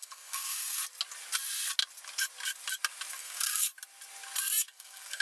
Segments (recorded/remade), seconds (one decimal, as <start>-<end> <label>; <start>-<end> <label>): 0.0-0.8 remade; 0.8-3.1 recorded; 3.1-3.7 remade; 3.7-4.7 recorded; 4.7-5.2 remade

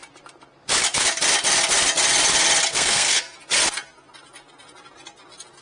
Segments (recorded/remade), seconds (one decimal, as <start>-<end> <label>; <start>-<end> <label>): 0.0-2.7 recorded; 2.7-3.2 remade; 3.2-5.6 recorded